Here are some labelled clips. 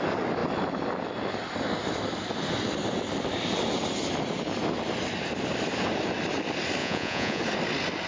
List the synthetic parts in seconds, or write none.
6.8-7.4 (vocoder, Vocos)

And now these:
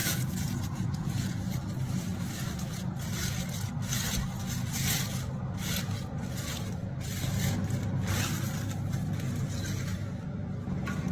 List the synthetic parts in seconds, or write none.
0.0-1.4 (vocoder, Vocos)

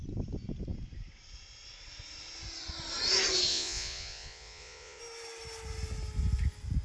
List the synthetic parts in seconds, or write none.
3.5-5.0 (vocoder, Vocos)

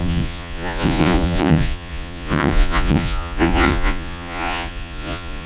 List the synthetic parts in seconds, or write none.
0.0-5.5 (vocoder, Vocos)